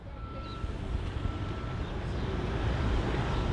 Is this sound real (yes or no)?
yes